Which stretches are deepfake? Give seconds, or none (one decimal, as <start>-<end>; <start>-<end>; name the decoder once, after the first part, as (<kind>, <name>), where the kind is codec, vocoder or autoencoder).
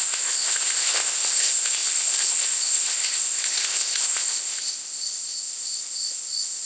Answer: 0.0-6.7 (codec, ZipCodec)